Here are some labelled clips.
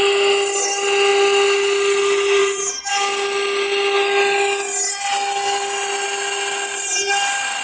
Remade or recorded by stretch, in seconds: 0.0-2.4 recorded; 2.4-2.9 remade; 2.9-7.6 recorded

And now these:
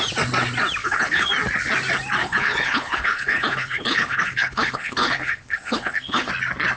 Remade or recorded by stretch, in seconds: 0.0-0.8 recorded; 0.8-1.3 remade; 1.3-2.2 recorded; 2.2-6.3 remade; 6.3-6.8 recorded

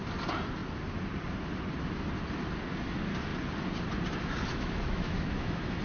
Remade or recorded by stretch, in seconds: 0.0-4.5 recorded; 4.5-5.8 remade

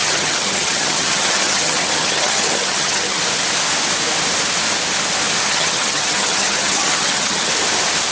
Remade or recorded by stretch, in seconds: 0.0-3.2 remade; 3.2-5.4 recorded; 5.4-7.5 remade; 7.5-8.1 recorded

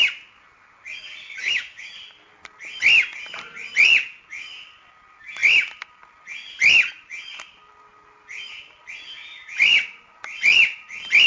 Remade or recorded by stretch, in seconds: 0.0-1.4 recorded; 1.4-1.9 remade; 1.9-11.3 recorded

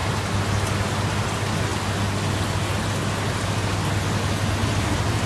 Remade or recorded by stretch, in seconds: 0.0-5.3 recorded